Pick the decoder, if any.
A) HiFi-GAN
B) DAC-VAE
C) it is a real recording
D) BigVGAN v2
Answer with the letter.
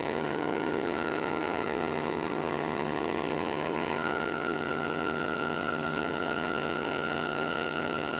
A